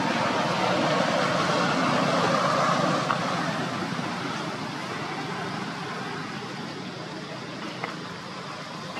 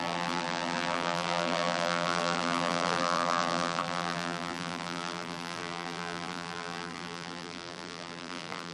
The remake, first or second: second